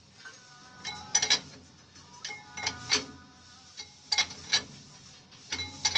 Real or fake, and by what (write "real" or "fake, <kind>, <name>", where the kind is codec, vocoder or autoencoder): real